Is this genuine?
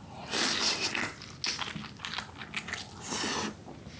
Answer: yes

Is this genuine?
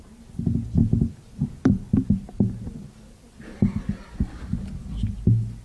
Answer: yes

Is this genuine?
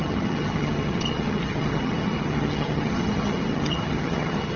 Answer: no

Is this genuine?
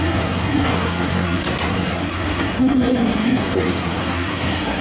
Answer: no